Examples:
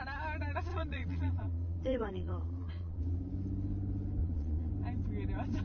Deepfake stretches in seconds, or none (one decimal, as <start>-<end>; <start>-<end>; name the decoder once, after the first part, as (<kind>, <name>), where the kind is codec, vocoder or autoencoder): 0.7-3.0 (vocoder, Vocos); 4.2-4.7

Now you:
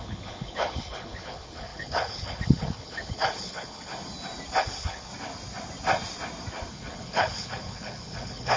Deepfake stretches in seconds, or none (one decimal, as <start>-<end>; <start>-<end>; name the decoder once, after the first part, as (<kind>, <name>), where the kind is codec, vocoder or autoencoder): 0.0-3.9 (codec, HILCodec); 4.6-5.1; 6.7-8.6

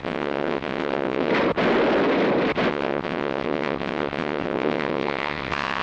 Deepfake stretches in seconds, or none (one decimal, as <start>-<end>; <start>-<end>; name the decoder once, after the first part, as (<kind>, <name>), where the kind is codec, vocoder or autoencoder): 0.0-1.3 (vocoder, WaveNeXt); 2.7-5.8